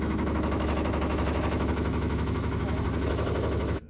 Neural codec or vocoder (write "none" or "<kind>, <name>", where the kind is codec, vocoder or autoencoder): autoencoder, DAC-VAE